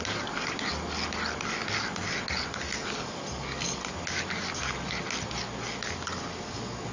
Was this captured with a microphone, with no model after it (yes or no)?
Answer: yes